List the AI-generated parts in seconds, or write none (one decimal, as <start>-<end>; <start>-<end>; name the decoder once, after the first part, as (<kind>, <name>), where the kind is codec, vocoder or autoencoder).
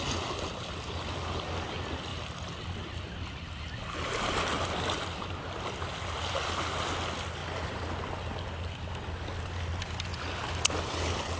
none